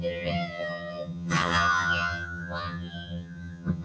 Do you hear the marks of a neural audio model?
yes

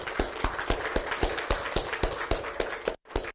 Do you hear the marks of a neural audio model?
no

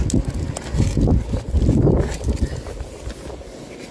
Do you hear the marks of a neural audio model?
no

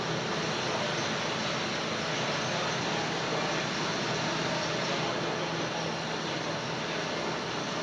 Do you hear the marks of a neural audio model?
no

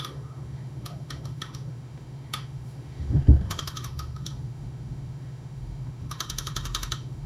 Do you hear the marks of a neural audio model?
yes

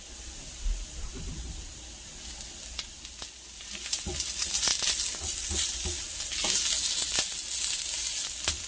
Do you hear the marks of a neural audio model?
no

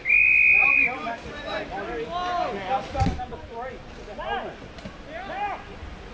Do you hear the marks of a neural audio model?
no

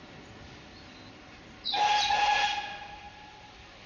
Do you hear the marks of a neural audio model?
no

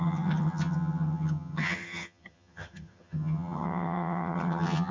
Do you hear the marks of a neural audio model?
yes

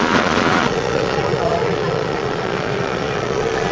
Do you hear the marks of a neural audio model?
yes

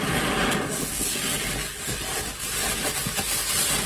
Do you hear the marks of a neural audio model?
no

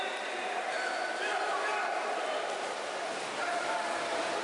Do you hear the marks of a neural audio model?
no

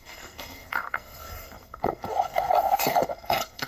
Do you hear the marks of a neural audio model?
yes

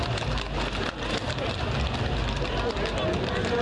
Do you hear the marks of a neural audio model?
no